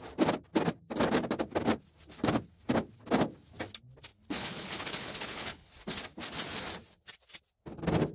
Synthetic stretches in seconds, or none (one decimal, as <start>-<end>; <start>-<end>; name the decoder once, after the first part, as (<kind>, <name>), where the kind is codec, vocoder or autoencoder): 4.1-5.7 (codec, HILCodec)